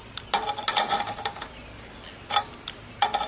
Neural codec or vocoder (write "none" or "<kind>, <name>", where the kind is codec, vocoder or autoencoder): none